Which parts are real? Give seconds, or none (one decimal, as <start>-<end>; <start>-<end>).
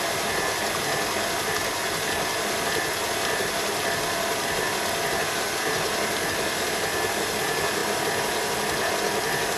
0.0-9.6